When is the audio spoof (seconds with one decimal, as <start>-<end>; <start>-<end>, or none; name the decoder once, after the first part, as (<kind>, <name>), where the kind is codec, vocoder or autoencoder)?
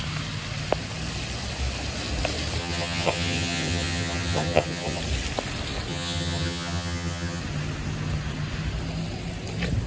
2.6-5.0 (vocoder, HiFi-GAN); 5.9-7.4